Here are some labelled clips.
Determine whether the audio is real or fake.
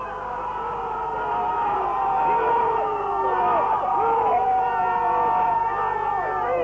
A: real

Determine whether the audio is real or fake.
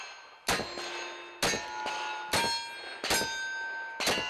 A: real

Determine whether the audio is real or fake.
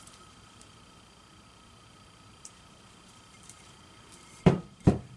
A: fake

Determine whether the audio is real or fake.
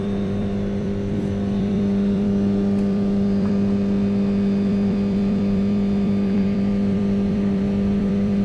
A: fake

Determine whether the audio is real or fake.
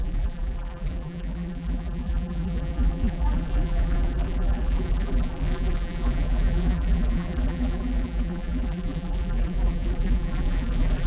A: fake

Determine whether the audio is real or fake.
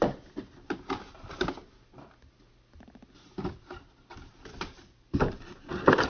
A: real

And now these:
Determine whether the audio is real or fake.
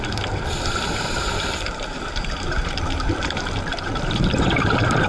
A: fake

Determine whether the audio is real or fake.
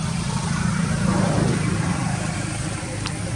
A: fake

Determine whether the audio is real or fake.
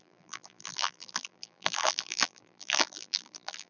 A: fake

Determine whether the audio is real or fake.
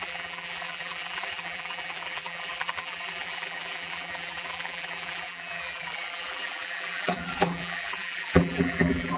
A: fake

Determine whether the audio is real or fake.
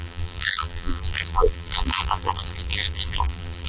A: fake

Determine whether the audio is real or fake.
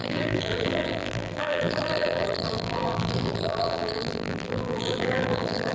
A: fake